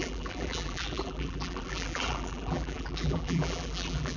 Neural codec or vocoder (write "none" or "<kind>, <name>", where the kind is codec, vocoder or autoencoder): vocoder, BigVGAN v2